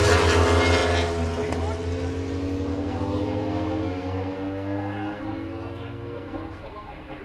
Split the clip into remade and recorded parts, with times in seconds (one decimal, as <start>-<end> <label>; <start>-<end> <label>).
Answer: 0.0-2.7 recorded; 2.7-7.2 remade